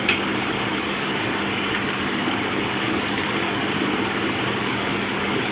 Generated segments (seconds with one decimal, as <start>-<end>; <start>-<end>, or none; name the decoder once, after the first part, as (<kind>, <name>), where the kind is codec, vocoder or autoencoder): 0.0-3.6 (codec, DAC); 4.6-5.5